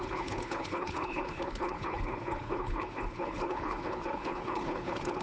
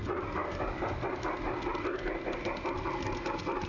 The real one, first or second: second